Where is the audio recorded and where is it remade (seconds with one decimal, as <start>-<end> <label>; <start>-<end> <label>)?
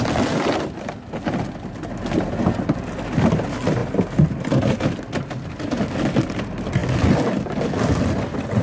0.0-8.6 recorded